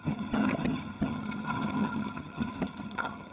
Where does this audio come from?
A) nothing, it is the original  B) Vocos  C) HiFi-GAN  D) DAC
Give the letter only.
C